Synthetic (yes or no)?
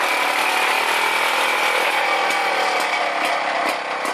no